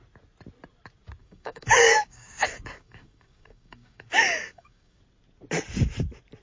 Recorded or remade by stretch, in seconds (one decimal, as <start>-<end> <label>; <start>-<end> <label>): 0.0-1.2 recorded; 1.2-5.0 remade; 5.0-6.4 recorded

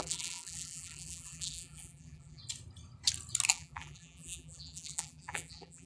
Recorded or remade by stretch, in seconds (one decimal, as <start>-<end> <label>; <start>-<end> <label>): 0.0-2.4 remade; 2.4-3.5 recorded; 3.5-5.9 remade